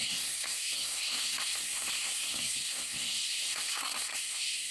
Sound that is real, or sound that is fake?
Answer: fake